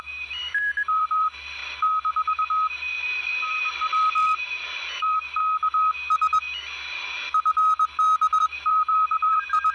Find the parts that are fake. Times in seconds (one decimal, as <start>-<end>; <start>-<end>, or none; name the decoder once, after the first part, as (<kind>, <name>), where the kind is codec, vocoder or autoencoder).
0.0-1.6 (vocoder, BigVGAN v2); 3.0-4.2; 5.0-5.4; 8.4-9.7